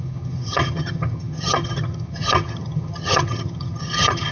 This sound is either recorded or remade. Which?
remade